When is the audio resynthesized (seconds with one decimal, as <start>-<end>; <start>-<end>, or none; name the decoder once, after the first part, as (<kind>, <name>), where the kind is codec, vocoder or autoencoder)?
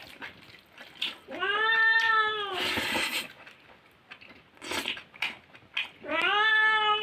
none